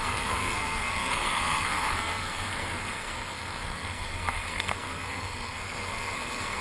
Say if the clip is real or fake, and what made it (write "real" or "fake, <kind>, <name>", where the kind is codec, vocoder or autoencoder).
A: fake, codec, SNAC